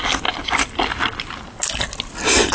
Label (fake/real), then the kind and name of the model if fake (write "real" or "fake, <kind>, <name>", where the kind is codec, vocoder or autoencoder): real